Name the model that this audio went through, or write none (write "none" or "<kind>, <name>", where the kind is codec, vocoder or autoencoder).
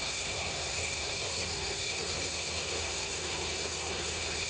codec, SNAC